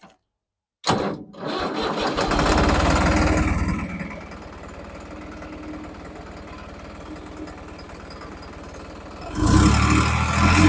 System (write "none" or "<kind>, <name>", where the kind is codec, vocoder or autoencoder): none